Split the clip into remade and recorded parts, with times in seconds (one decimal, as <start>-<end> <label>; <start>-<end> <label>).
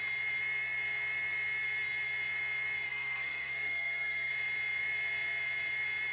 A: 0.0-2.9 recorded; 2.9-4.3 remade; 4.3-6.1 recorded